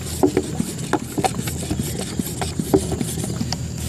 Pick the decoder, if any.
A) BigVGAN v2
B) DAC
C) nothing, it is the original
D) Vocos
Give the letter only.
C